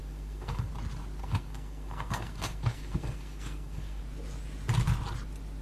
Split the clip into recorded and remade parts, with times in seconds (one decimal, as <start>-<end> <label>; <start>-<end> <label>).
0.0-0.7 remade; 0.7-1.2 recorded; 1.2-4.0 remade; 4.0-5.6 recorded